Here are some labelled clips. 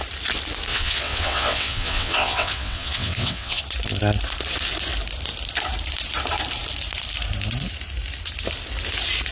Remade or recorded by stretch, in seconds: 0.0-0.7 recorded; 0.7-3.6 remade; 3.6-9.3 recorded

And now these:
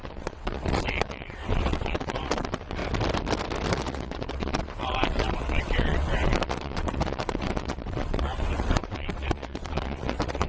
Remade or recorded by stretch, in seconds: 0.0-2.8 remade; 2.8-3.7 recorded; 3.7-10.5 remade

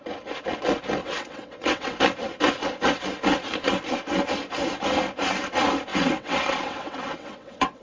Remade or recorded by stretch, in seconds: 0.0-1.0 recorded; 1.0-2.0 remade; 2.0-5.9 recorded; 5.9-7.8 remade

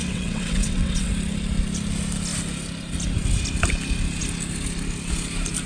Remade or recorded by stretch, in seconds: 0.0-1.1 remade; 1.1-5.7 recorded

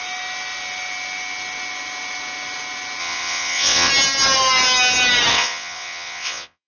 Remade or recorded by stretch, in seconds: 0.0-3.0 recorded; 3.0-3.9 remade; 3.9-5.3 recorded; 5.3-6.7 remade

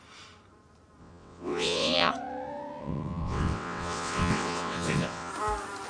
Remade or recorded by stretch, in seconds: 0.0-1.0 recorded; 1.0-2.1 remade; 2.1-2.8 recorded; 2.8-5.3 remade; 5.3-5.9 recorded